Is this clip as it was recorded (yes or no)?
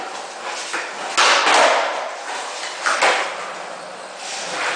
yes